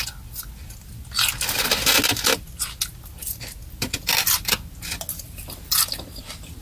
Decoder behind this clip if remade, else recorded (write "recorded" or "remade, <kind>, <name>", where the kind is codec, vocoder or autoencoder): recorded